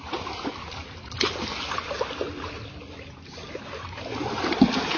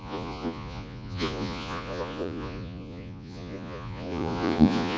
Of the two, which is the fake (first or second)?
second